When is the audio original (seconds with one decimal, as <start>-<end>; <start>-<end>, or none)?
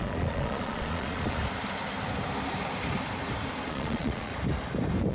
1.4-3.7; 4.3-5.1